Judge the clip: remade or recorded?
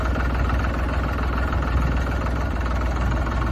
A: recorded